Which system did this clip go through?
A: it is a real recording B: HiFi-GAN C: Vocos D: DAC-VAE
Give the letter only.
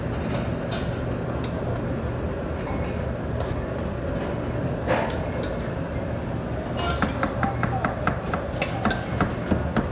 A